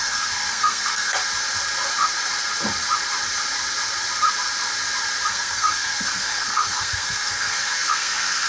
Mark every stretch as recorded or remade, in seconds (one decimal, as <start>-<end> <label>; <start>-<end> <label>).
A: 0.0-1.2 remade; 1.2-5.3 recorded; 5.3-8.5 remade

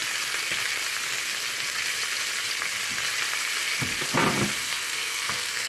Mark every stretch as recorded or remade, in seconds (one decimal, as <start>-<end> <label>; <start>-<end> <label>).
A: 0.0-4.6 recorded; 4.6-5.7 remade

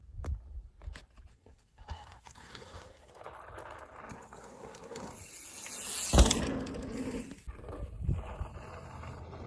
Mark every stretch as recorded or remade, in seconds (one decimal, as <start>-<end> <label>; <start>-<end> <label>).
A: 0.0-1.3 recorded; 1.3-3.1 remade; 3.1-4.1 recorded; 4.1-5.1 remade; 5.1-9.5 recorded

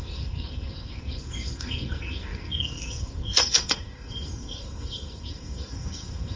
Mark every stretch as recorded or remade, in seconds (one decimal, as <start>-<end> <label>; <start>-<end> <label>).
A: 0.0-6.4 remade

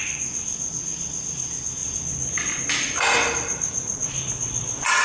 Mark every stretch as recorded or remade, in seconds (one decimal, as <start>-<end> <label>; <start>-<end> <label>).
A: 0.0-5.0 recorded